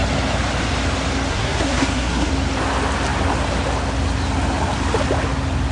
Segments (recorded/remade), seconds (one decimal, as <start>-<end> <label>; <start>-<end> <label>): 0.0-1.3 recorded; 1.3-2.3 remade; 2.3-5.7 recorded